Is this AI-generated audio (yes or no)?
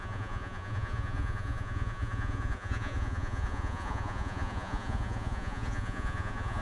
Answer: yes